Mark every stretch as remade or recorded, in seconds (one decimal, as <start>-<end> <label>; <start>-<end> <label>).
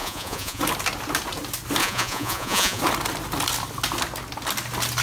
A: 0.0-0.6 remade; 0.6-1.8 recorded; 1.8-2.8 remade; 2.8-5.0 recorded